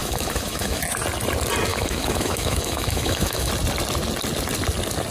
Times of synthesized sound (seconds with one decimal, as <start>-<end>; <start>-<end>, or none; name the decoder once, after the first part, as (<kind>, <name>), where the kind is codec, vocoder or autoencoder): 0.0-0.8 (autoencoder, DAC-VAE); 1.7-3.5